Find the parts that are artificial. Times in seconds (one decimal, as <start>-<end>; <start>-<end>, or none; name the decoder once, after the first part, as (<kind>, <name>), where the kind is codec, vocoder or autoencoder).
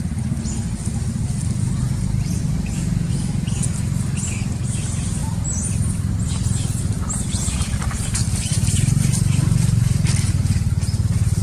8.2-11.4 (vocoder, BigVGAN v2)